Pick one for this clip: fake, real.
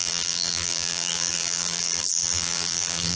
fake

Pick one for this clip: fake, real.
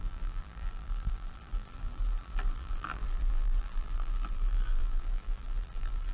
fake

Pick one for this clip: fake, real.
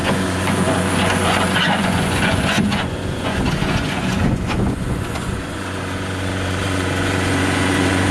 fake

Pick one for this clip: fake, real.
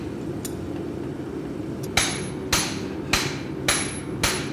real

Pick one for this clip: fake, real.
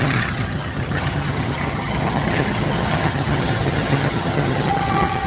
fake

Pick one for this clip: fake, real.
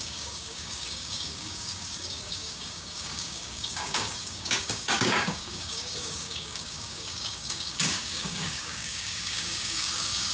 fake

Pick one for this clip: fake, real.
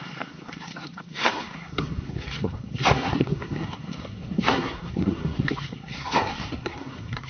fake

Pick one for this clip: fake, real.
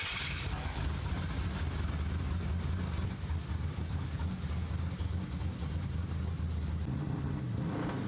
real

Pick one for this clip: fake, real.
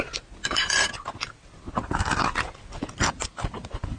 real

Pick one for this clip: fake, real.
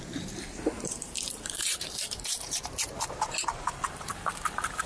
fake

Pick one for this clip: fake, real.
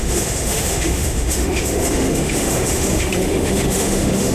fake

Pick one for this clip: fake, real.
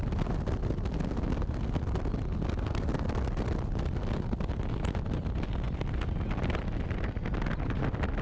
real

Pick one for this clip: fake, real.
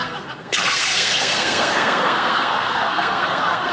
fake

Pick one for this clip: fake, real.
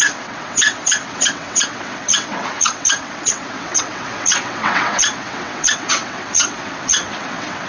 fake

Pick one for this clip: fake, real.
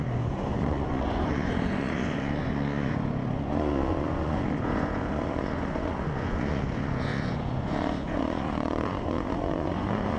fake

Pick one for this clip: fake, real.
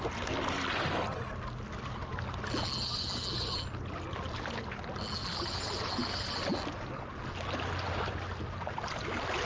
real